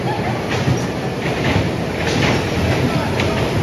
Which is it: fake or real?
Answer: real